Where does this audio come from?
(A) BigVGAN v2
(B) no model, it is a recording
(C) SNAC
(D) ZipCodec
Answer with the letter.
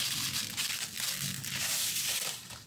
A